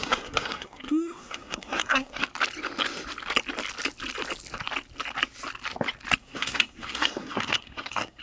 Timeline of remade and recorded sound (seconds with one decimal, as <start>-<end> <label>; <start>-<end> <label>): 0.0-2.2 remade; 2.2-6.2 recorded; 6.2-8.2 remade